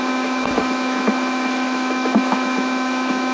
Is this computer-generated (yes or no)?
yes